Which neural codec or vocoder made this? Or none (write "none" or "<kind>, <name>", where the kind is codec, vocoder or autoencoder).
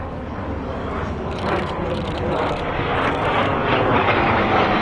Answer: codec, DAC